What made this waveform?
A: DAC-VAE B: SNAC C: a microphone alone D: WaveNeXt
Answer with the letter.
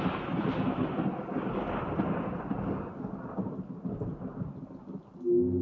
C